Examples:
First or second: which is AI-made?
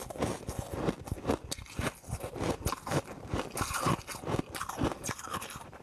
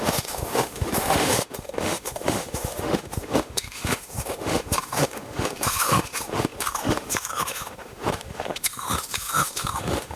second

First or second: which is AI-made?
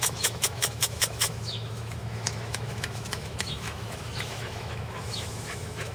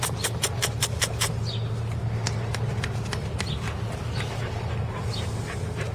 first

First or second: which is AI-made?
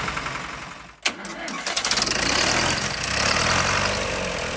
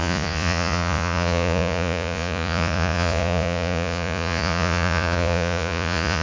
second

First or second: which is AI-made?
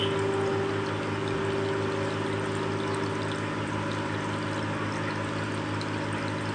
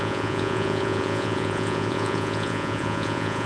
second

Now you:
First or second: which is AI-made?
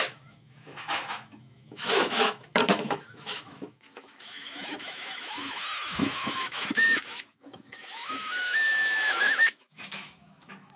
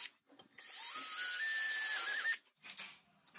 first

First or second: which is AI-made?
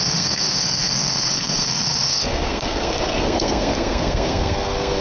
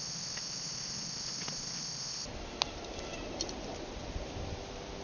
first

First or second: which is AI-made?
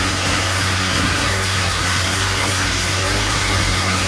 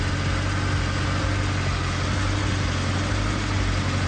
first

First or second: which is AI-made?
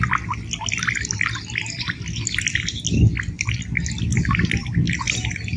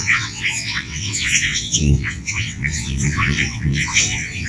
second